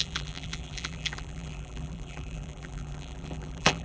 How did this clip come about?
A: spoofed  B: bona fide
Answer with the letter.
A